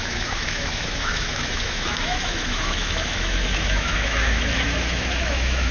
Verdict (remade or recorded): remade